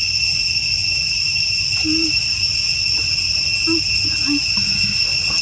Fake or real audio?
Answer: real